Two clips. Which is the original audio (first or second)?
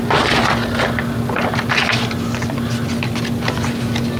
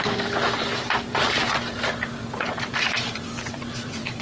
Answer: first